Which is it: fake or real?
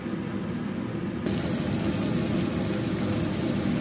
real